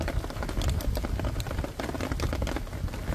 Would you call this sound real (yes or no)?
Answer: yes